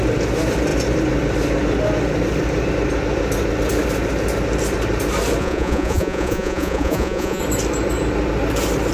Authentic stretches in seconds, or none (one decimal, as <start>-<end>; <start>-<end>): 0.0-5.4; 7.4-8.9